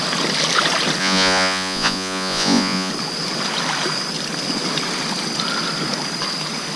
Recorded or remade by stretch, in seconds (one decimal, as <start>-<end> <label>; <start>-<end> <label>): 0.0-1.0 recorded; 1.0-2.9 remade; 2.9-6.8 recorded